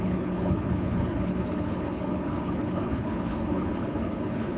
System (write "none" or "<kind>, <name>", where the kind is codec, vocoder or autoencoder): codec, HILCodec